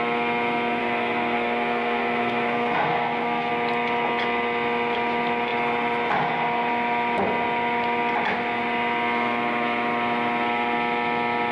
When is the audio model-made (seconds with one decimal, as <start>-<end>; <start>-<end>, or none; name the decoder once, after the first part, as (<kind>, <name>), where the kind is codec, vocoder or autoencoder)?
0.8-3.5 (codec, SNAC)